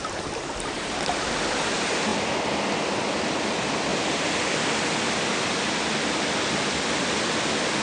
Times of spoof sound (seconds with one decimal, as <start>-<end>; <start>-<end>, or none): none